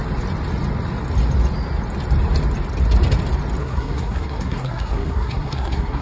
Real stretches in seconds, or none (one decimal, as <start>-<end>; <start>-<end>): 0.0-3.6